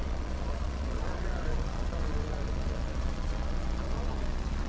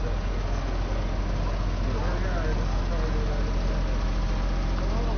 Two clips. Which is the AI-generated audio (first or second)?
first